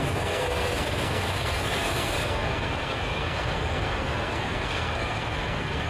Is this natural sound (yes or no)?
no